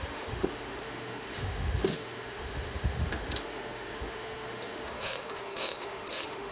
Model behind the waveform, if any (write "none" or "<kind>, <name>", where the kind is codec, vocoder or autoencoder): autoencoder, DAC-VAE